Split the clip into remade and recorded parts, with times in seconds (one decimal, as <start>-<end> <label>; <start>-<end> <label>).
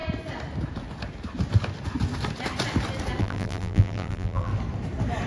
0.0-3.2 recorded; 3.2-4.5 remade; 4.5-5.3 recorded